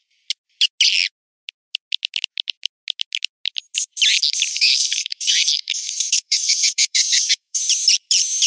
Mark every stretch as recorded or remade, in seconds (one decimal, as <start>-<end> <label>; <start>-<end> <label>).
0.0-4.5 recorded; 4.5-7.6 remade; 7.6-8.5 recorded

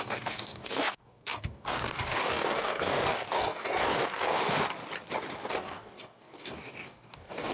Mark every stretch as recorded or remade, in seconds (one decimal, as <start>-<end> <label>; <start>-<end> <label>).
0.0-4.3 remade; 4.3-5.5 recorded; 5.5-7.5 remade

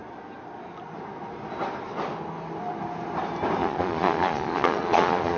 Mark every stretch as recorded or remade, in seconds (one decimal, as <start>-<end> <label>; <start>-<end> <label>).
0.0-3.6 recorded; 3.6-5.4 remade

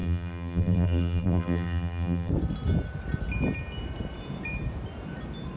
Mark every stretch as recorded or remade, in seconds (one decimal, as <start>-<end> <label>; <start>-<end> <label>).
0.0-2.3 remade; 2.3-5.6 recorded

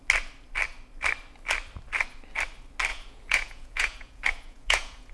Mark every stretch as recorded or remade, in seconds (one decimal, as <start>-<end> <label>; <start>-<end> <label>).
0.0-2.9 recorded; 2.9-5.1 remade